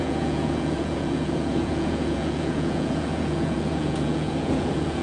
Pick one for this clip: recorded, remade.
remade